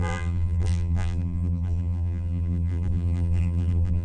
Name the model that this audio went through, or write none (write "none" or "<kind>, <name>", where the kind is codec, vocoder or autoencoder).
vocoder, BigVGAN v2